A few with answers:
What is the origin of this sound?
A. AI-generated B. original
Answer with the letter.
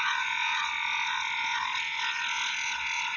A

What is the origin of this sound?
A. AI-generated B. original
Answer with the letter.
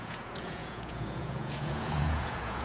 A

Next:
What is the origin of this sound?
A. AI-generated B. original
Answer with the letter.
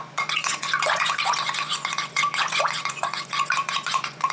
A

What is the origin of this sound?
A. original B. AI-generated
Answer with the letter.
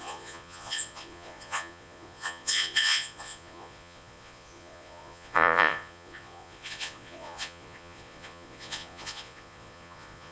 B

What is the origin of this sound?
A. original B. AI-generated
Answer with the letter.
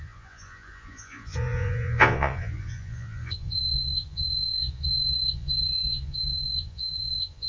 B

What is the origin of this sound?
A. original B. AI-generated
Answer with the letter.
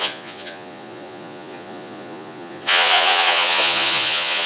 B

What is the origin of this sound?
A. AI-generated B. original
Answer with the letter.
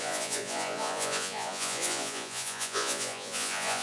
A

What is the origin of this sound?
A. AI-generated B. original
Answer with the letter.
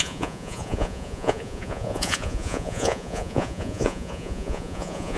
A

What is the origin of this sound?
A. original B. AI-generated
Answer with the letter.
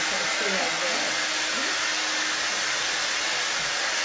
A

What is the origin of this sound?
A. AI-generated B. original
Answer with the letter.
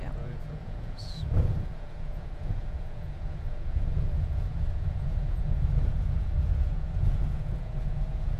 A